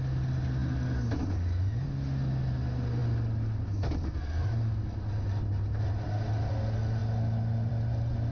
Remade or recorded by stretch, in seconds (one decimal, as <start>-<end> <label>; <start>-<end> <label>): 0.0-8.3 recorded